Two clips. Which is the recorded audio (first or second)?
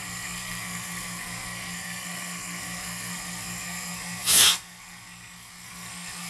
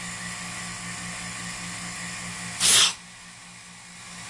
second